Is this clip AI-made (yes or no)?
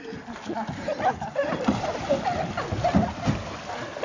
no